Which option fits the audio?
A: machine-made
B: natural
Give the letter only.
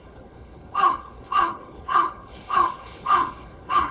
A